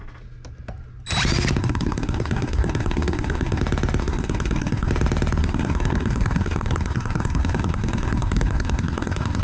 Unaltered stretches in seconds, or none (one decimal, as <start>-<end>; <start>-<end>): 0.0-1.6; 3.6-4.0; 4.9-5.4